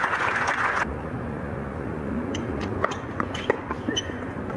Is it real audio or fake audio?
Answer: fake